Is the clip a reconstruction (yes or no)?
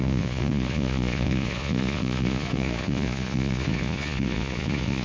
yes